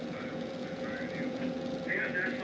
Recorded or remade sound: remade